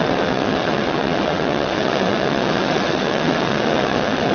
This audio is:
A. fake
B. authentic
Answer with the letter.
A